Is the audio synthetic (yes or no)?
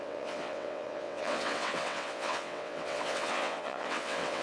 yes